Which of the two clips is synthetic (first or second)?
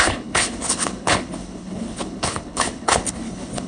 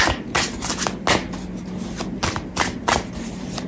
first